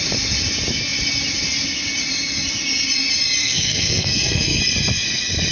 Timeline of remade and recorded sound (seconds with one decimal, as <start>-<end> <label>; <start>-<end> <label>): 0.0-3.4 recorded; 3.4-4.6 remade; 4.6-5.5 recorded